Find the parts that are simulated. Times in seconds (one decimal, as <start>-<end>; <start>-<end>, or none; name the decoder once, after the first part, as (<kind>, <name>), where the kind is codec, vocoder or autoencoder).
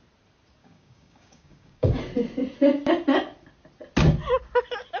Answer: 0.6-2.0 (codec, DAC)